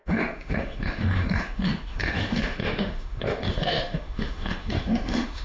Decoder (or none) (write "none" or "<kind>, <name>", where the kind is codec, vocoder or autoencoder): autoencoder, DAC-VAE